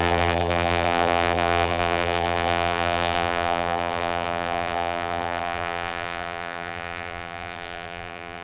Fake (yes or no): yes